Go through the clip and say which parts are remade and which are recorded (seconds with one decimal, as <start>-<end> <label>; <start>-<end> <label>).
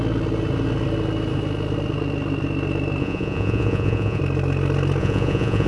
0.0-3.0 recorded; 3.0-4.2 remade; 4.2-5.0 recorded; 5.0-5.7 remade